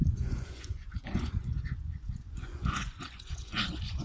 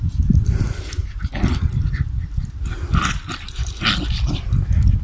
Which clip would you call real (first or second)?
second